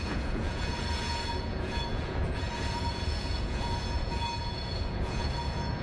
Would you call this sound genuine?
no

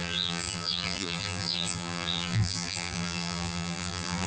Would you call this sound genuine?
no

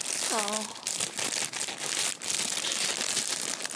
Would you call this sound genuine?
yes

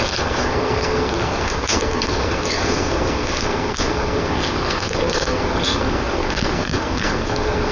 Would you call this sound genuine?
no